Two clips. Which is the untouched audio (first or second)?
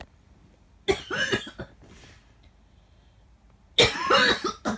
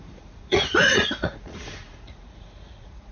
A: first